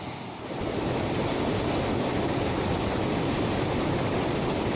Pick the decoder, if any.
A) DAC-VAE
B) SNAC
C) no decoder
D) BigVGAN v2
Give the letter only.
C